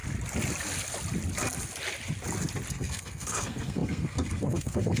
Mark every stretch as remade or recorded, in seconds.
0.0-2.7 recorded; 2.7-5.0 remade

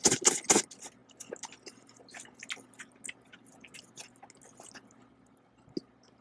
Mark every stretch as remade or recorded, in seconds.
0.0-6.2 recorded

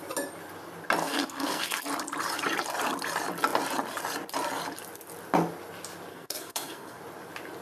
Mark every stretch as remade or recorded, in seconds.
0.0-1.0 recorded; 1.0-1.8 remade; 1.8-6.1 recorded; 6.1-7.0 remade; 7.0-7.6 recorded

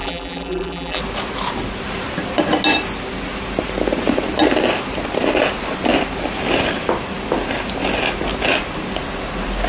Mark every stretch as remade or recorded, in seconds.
0.0-1.0 remade; 1.0-9.7 recorded

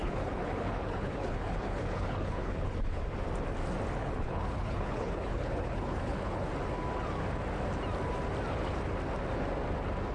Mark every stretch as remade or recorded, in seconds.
0.0-3.0 remade; 3.0-4.0 recorded; 4.0-6.5 remade; 6.5-10.1 recorded

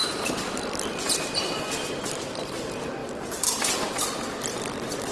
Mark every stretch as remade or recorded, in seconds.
0.0-5.1 remade

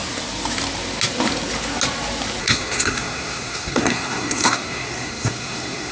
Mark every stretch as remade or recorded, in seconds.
0.0-2.4 recorded; 2.4-5.9 remade

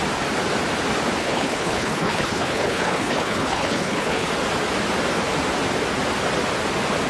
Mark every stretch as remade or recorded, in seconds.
0.0-1.2 recorded; 1.2-4.3 remade; 4.3-7.1 recorded